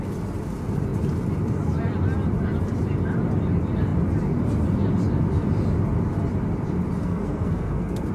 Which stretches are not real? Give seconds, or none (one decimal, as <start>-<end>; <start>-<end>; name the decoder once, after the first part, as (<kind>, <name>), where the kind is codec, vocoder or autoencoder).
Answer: 7.0-8.1 (codec, SNAC)